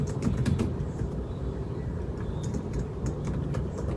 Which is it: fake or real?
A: fake